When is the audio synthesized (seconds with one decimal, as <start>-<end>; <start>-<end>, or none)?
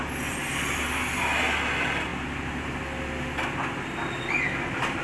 none